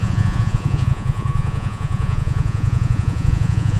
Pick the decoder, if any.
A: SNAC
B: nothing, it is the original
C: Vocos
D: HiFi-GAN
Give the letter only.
C